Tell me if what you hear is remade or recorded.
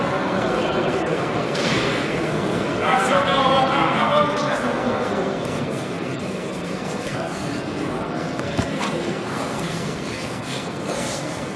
remade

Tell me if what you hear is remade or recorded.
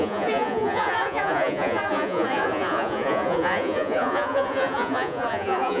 remade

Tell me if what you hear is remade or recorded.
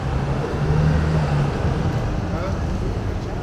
recorded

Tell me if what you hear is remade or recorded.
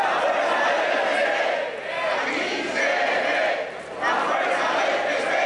recorded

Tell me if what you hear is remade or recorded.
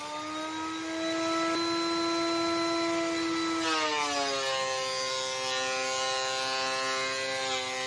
recorded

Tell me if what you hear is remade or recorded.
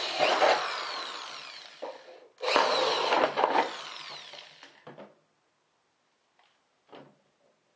recorded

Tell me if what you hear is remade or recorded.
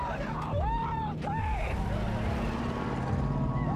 recorded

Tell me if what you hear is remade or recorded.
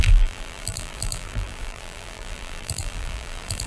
remade